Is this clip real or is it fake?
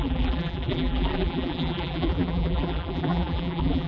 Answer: fake